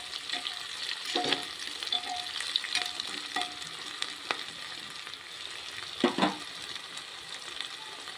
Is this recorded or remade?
recorded